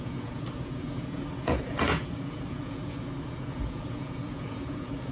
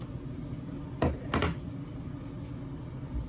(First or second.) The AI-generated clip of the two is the first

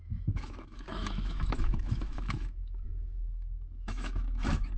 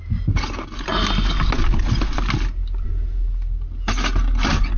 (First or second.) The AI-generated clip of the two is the first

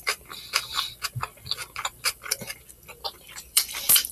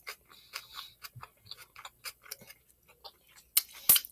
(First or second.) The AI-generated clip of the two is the first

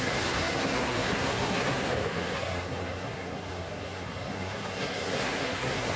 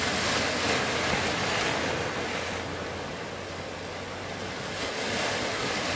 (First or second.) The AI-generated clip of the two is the first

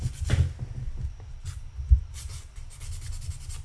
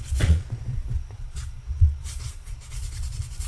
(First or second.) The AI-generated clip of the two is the second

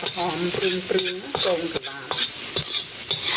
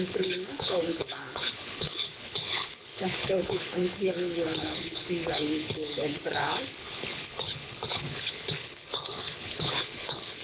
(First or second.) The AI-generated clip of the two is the second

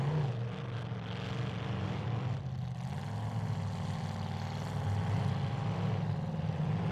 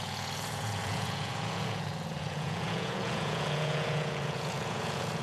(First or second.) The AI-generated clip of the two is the second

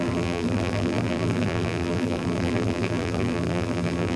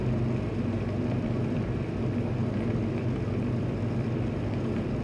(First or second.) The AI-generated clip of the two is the first